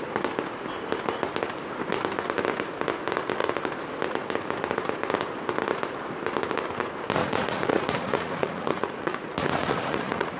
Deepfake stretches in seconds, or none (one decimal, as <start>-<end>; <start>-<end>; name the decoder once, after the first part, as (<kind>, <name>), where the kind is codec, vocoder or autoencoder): 7.2-10.4 (vocoder, Vocos)